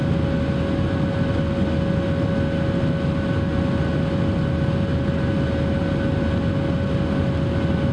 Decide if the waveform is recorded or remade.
recorded